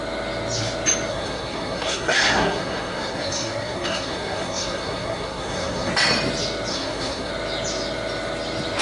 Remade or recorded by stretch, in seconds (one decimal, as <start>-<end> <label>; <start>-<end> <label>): 0.0-1.1 recorded; 1.1-5.9 remade; 5.9-6.7 recorded; 6.7-7.3 remade; 7.3-8.8 recorded